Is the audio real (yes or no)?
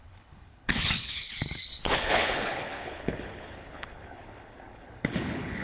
no